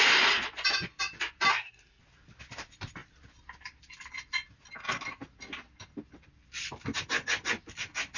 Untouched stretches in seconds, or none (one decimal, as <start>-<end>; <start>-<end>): 0.0-1.5; 2.0-8.2